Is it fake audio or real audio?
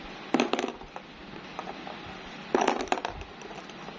real